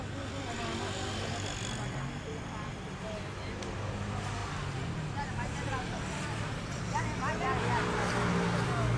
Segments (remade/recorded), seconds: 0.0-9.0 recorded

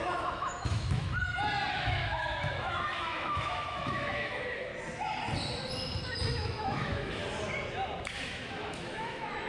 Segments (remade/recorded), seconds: 0.0-1.1 remade; 1.1-1.7 recorded; 1.7-4.7 remade; 4.7-6.3 recorded; 6.3-7.2 remade; 7.2-8.2 recorded; 8.2-9.5 remade

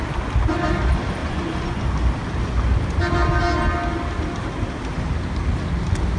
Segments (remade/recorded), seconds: 0.0-1.2 recorded; 1.2-1.8 remade; 1.8-6.2 recorded

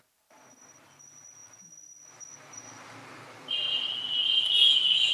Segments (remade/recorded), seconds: 0.0-5.1 recorded

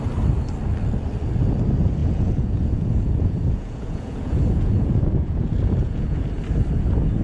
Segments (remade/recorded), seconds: 0.0-2.0 recorded; 2.0-6.3 remade; 6.3-7.2 recorded

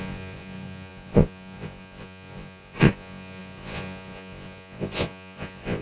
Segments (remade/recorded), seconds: 0.0-5.8 remade